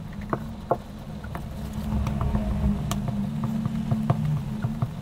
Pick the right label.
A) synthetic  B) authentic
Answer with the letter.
B